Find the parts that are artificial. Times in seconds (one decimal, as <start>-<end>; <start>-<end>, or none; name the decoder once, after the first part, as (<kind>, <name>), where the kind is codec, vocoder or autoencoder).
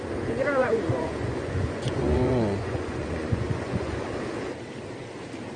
0.6-4.0 (vocoder, Vocos)